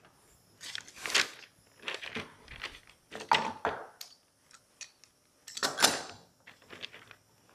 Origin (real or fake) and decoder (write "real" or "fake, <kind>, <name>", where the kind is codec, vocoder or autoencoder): real